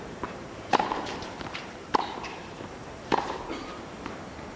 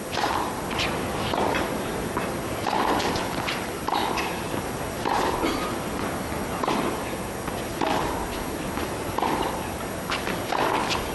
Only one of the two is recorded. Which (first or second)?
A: second